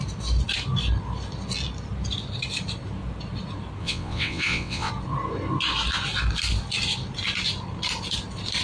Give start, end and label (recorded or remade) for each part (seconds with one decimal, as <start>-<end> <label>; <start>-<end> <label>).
0.0-3.8 recorded; 3.8-4.9 remade; 4.9-8.6 recorded